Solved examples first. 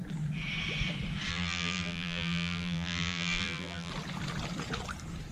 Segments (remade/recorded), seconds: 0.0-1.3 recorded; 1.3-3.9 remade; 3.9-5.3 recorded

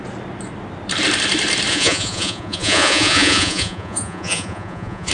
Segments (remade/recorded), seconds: 0.0-1.7 recorded; 1.7-5.1 remade

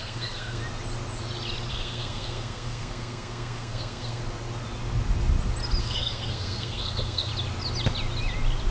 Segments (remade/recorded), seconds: 0.0-0.6 remade; 0.6-1.7 recorded; 1.7-4.2 remade; 4.2-5.8 recorded; 5.8-7.3 remade; 7.3-8.7 recorded